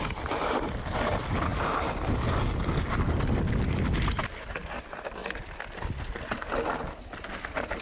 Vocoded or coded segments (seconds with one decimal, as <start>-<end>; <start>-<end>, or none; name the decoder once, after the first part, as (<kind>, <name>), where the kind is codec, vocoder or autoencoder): none